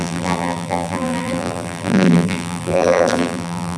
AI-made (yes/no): yes